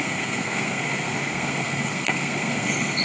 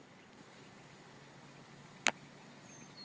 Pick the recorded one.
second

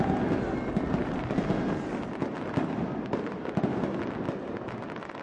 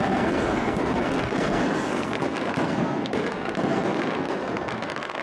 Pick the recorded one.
first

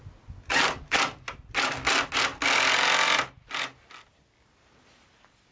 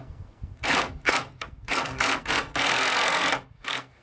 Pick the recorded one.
first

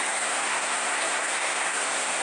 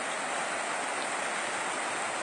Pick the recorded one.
second